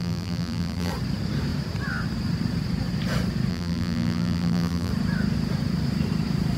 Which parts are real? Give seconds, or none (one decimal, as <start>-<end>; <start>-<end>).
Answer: 0.9-3.5; 4.9-6.6